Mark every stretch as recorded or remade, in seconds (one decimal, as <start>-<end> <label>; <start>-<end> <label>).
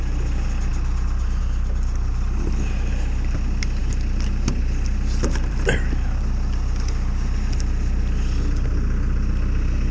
0.0-0.7 recorded; 0.7-1.4 remade; 1.4-3.8 recorded; 3.8-6.2 remade; 6.2-9.9 recorded